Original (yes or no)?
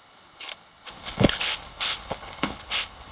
no